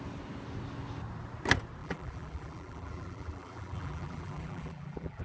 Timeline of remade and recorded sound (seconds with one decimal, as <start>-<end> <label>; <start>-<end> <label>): 0.0-1.8 recorded; 1.8-5.2 remade